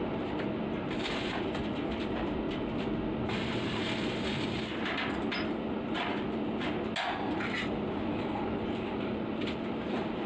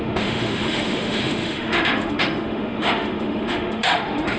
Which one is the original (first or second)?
first